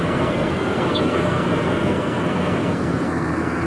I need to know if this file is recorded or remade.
remade